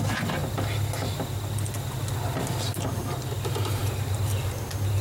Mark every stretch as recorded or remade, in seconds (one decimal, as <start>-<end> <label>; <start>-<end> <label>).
0.0-5.0 recorded